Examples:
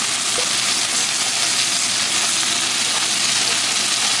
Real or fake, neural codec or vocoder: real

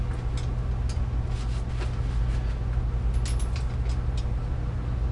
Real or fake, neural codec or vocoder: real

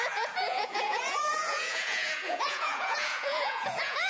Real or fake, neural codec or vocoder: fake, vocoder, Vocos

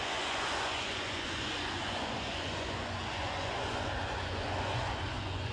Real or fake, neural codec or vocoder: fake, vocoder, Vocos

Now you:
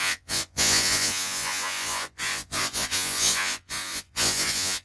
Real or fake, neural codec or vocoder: fake, vocoder, Vocos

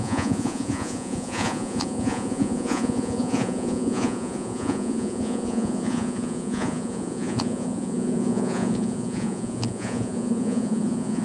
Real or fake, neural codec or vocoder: fake, vocoder, Vocos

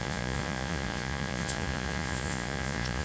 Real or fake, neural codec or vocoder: fake, vocoder, Vocos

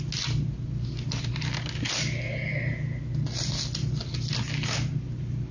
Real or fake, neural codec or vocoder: real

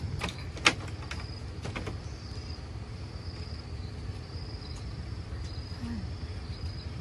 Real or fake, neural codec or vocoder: real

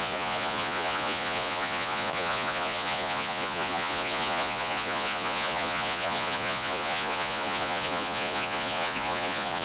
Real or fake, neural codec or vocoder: fake, vocoder, Vocos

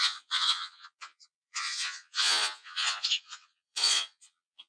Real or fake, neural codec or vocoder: fake, vocoder, Vocos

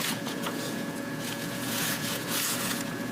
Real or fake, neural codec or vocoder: fake, vocoder, Vocos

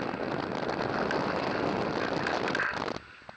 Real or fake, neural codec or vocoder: real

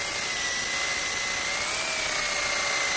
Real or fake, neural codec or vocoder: real